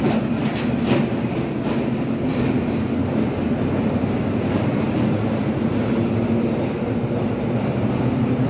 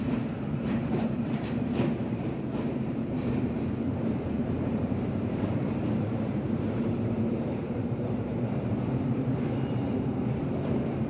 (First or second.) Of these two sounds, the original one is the first